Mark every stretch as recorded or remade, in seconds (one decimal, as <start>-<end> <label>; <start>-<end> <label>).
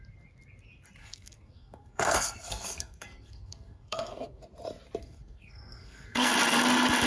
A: 0.0-1.0 recorded; 1.0-4.4 remade; 4.4-5.0 recorded; 5.0-6.3 remade; 6.3-7.1 recorded